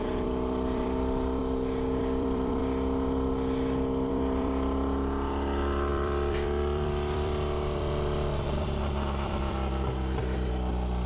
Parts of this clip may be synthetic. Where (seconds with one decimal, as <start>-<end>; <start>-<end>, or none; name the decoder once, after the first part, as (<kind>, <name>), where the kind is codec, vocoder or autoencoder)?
0.0-1.4 (vocoder, BigVGAN v2); 2.0-2.6; 4.1-11.1